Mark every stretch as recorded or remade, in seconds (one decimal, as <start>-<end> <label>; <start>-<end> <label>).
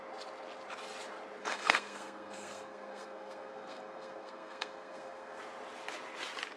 0.0-1.4 recorded; 1.4-5.4 remade; 5.4-6.6 recorded